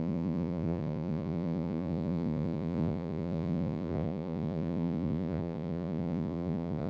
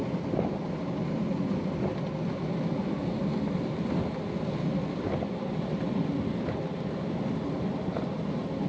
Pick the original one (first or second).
second